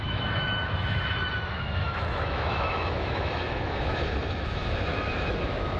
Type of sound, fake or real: fake